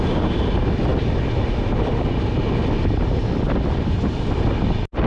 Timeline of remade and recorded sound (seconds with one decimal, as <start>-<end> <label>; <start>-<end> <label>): 0.0-5.1 recorded